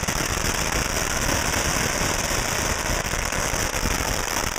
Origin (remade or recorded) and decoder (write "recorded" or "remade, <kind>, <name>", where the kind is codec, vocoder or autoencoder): recorded